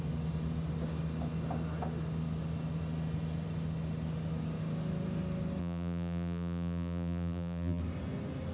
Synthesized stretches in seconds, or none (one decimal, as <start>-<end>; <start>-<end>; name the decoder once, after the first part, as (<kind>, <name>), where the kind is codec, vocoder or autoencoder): 5.6-7.8 (vocoder, BigVGAN v2)